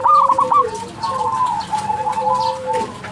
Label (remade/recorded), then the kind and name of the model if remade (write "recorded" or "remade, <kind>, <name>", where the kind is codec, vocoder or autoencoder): recorded